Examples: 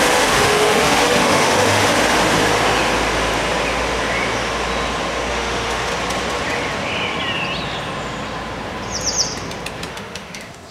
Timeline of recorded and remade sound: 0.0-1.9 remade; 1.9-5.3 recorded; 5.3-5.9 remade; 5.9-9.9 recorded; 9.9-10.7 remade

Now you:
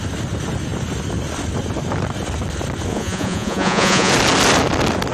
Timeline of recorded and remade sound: 0.0-2.9 recorded; 2.9-4.1 remade; 4.1-5.1 recorded

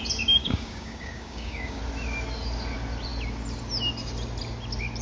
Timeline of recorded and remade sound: 0.0-0.4 recorded; 0.4-1.8 remade; 1.8-5.0 recorded

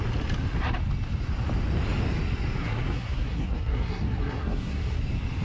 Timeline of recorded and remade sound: 0.0-2.6 recorded; 2.6-5.0 remade; 5.0-5.4 recorded

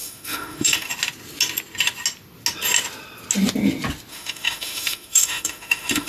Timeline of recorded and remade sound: 0.0-0.9 remade; 0.9-4.1 recorded; 4.1-6.1 remade